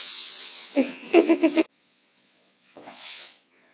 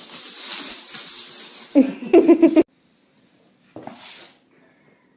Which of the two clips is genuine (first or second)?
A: second